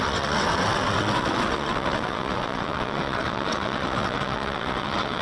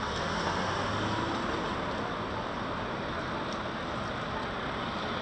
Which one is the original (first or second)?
second